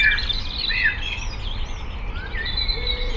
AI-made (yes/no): no